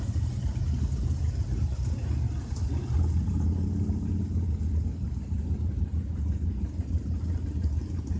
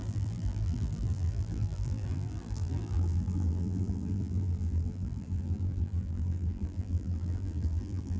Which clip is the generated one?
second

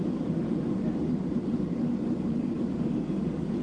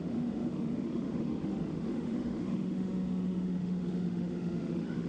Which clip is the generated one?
second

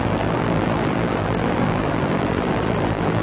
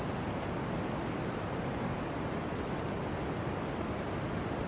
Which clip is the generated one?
first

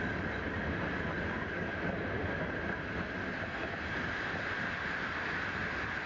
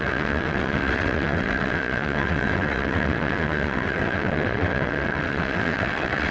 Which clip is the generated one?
second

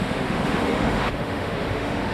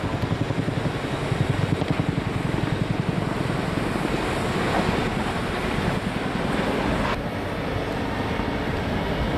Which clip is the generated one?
first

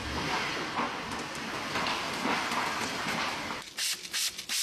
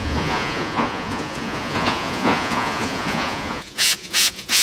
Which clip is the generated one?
second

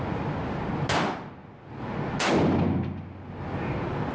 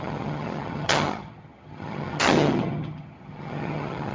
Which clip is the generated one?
second